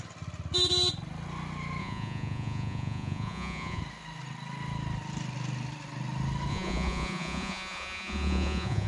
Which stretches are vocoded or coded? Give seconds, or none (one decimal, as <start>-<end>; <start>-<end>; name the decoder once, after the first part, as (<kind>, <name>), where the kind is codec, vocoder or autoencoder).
1.8-3.8 (vocoder, Vocos); 6.5-8.9